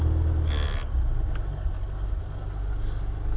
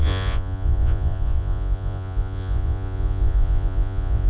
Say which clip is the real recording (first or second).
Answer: first